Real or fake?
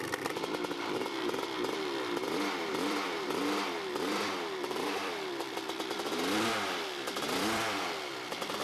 fake